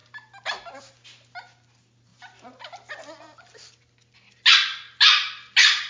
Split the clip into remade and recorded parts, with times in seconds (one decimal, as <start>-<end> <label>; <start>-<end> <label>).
0.0-5.9 recorded